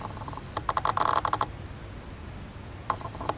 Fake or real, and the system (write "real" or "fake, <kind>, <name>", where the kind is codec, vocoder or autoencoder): real